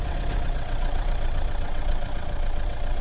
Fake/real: fake